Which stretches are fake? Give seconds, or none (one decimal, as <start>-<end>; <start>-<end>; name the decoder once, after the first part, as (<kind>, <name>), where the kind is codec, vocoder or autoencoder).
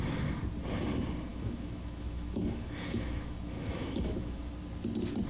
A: 1.3-4.5 (autoencoder, DAC-VAE)